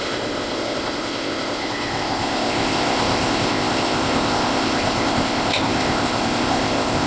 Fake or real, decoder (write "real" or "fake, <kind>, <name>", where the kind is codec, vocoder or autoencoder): fake, codec, ZipCodec